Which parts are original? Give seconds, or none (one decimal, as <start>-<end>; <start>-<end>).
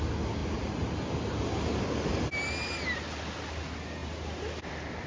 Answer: 0.0-5.1